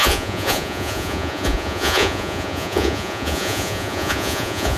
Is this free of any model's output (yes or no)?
no